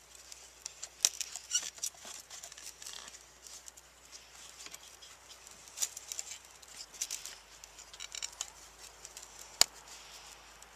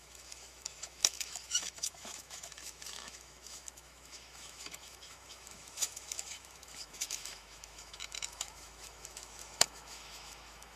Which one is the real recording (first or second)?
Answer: first